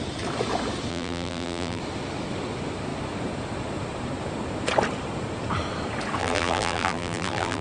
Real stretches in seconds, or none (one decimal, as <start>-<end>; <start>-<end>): 0.0-0.9; 1.8-6.2